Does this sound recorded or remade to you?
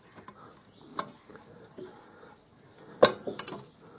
recorded